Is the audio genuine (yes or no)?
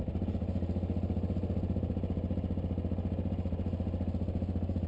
yes